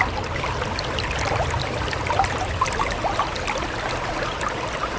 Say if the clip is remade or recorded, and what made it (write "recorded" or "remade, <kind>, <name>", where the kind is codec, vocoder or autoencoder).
recorded